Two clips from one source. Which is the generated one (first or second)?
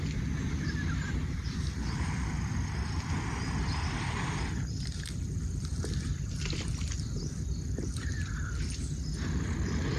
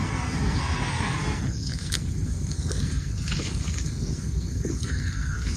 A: second